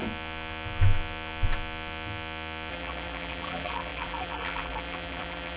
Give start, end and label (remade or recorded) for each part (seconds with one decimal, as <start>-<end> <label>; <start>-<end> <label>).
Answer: 0.0-2.7 recorded; 2.7-5.6 remade